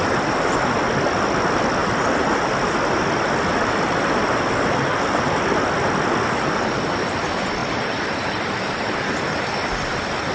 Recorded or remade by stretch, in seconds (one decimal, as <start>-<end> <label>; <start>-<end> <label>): 0.0-7.6 recorded; 7.6-8.9 remade; 8.9-10.3 recorded